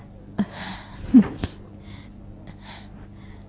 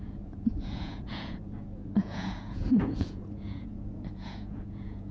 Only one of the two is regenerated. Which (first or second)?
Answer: second